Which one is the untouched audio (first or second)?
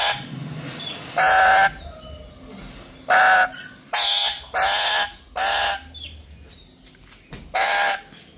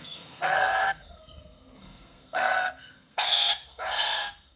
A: first